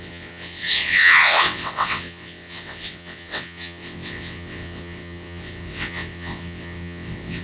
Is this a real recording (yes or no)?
no